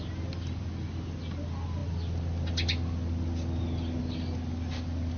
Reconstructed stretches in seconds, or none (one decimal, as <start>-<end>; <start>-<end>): none